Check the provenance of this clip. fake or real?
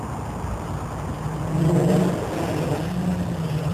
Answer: real